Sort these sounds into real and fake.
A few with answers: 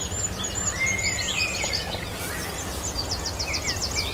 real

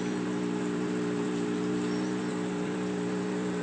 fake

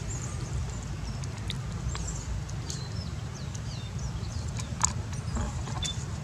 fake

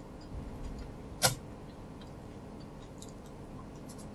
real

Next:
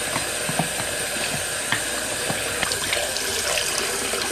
real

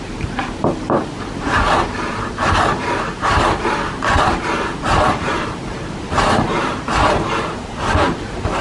fake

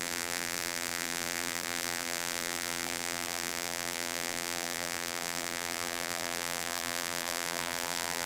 fake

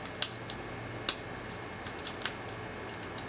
real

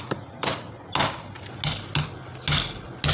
real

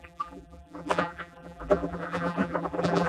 fake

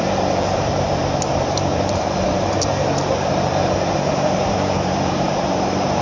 fake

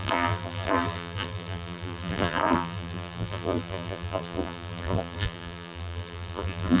fake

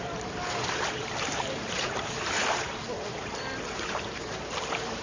fake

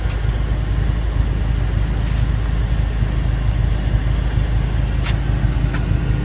real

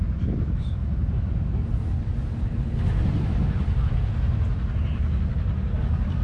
real